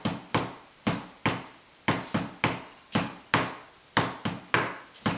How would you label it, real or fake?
real